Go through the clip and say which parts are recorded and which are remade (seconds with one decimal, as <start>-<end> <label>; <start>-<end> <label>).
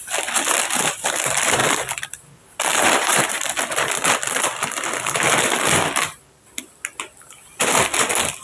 0.0-2.7 recorded; 2.7-3.3 remade; 3.3-8.4 recorded